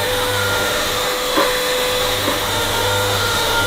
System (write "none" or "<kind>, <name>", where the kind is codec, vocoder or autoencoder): autoencoder, DAC-VAE